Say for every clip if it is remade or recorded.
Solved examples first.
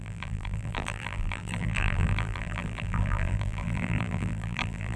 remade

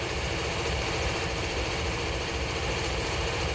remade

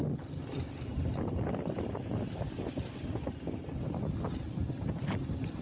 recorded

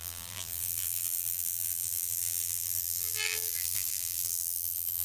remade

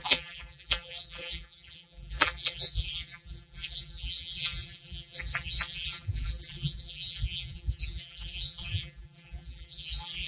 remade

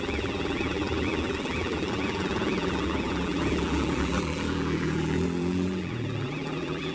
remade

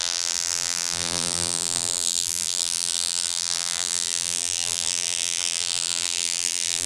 remade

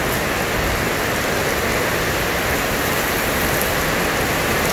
recorded